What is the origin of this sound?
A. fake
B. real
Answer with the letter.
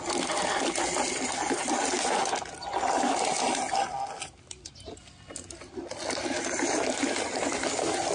B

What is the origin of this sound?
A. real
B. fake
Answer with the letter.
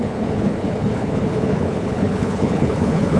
B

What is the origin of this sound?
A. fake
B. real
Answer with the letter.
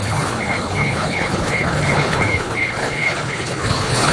A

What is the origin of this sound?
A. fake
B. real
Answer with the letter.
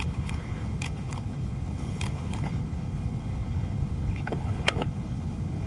A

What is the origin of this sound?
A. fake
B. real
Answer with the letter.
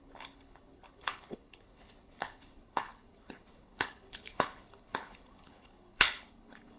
A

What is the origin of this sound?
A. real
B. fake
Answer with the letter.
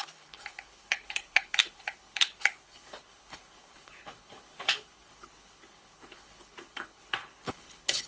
B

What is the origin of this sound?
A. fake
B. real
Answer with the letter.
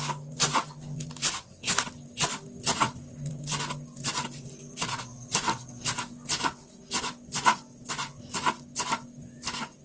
B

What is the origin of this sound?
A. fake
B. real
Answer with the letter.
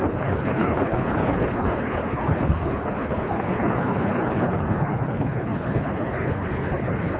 A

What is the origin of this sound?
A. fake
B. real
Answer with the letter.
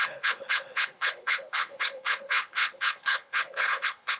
A